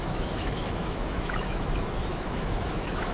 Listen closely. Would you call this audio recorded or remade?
remade